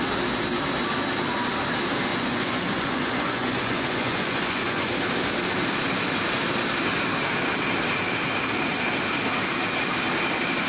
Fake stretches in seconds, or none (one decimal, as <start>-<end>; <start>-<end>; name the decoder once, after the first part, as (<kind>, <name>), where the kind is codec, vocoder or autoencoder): 2.1-4.9 (vocoder, Vocos)